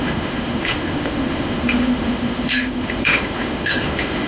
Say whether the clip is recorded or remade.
remade